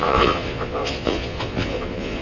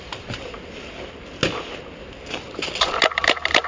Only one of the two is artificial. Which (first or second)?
first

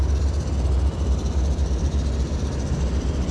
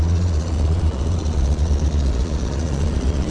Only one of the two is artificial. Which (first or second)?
second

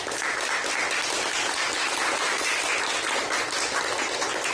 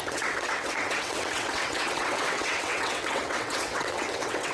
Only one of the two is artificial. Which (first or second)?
second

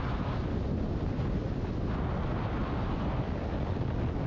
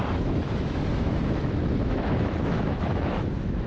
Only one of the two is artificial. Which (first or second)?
second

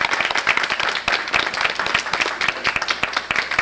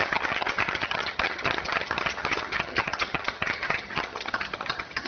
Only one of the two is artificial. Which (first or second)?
second